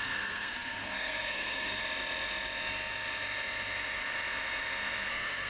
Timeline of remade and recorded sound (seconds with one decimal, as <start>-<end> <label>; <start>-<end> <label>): 0.0-1.8 remade; 1.8-5.1 recorded; 5.1-5.5 remade